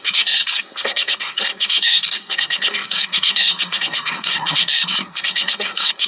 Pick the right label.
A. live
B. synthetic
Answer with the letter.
B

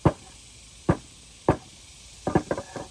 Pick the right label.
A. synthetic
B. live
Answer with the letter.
B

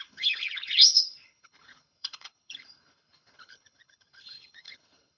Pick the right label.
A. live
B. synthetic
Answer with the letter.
B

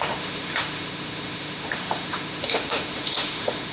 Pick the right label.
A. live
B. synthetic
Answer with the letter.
B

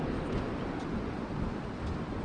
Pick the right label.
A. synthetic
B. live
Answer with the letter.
B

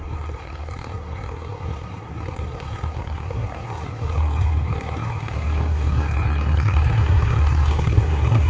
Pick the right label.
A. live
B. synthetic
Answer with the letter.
B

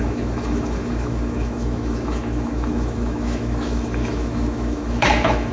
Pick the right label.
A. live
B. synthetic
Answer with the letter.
B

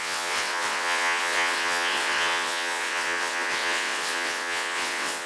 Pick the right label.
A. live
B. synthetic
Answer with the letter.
B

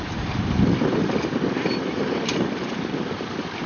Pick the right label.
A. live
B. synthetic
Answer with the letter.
A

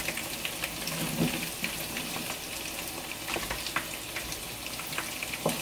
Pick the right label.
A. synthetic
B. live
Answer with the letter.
B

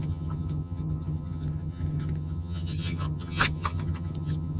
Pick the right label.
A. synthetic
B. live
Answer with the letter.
A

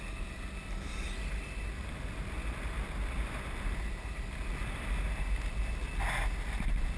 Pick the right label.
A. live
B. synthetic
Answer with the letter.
A